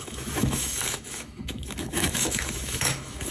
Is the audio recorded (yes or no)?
no